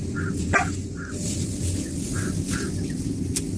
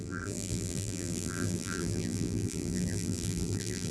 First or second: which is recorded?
first